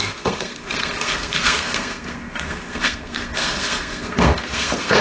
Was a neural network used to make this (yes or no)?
yes